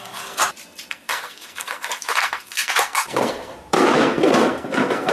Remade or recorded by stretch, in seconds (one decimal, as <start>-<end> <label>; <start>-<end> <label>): 0.0-0.4 remade; 0.4-0.9 recorded; 0.9-5.1 remade